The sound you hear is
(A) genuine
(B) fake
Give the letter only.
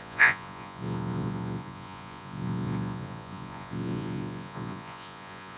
B